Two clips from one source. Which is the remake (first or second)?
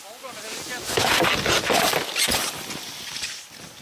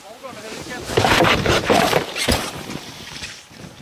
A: second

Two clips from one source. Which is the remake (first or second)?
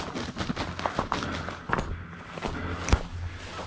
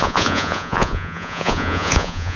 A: second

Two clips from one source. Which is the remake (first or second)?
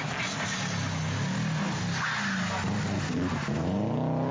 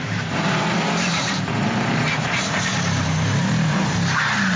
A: second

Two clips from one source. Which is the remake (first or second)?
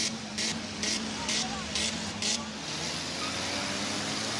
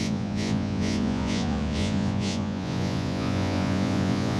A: second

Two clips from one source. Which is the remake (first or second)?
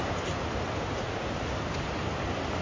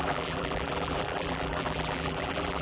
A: second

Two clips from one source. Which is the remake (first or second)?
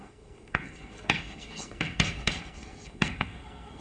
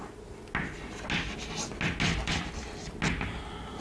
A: first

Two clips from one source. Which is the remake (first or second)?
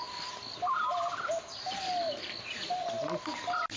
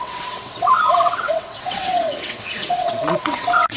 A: second